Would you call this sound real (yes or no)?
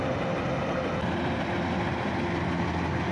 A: yes